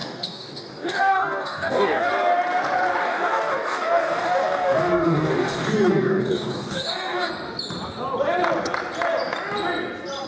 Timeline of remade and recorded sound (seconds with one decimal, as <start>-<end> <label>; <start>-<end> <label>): 0.0-2.1 remade; 2.1-3.0 recorded; 3.0-7.3 remade; 7.3-10.3 recorded